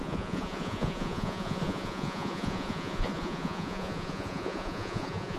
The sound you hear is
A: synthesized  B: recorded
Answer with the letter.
A